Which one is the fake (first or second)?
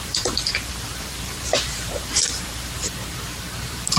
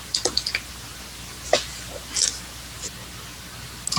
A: first